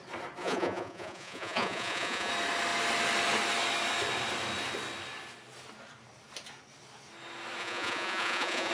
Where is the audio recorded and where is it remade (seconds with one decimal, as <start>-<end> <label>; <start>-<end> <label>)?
0.0-0.4 recorded; 0.4-2.3 remade; 2.3-7.6 recorded; 7.6-8.7 remade